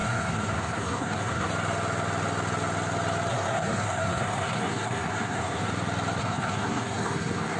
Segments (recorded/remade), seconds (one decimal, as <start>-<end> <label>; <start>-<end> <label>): 0.0-1.5 remade; 1.5-3.3 recorded; 3.3-5.7 remade; 5.7-6.2 recorded; 6.2-7.6 remade